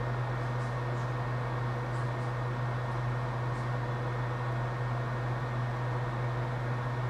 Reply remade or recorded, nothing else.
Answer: recorded